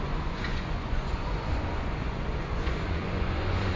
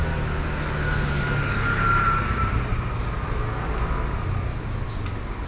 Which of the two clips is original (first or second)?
second